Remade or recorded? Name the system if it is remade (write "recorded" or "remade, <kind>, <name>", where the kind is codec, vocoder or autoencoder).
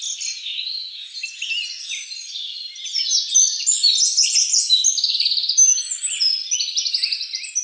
recorded